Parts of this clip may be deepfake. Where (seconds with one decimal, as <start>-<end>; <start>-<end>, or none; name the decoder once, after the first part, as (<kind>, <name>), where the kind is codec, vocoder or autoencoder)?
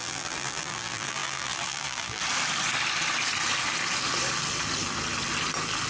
0.0-2.2 (vocoder, BigVGAN v2)